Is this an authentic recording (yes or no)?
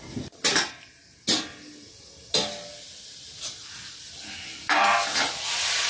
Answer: yes